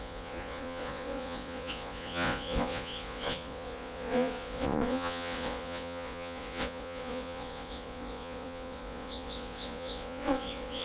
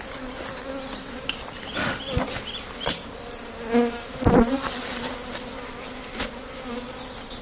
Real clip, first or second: second